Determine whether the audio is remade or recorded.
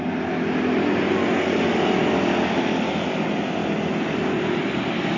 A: recorded